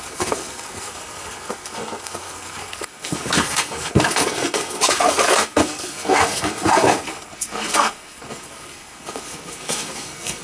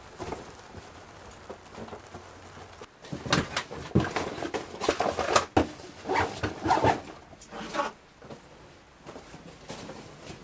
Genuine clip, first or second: second